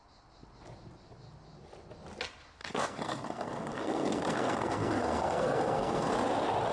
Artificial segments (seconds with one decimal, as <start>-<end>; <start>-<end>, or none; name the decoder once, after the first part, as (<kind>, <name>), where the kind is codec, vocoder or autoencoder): 2.6-6.1 (codec, SNAC)